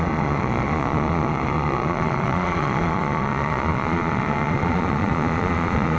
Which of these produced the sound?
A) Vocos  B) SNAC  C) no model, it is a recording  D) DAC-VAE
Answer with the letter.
A